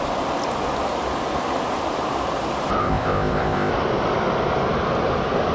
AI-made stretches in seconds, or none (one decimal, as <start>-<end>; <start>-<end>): 2.8-3.7